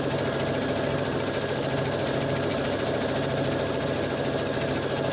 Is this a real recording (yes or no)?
yes